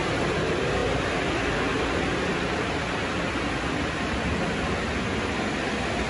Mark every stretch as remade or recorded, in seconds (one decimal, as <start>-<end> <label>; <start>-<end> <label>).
0.0-6.1 recorded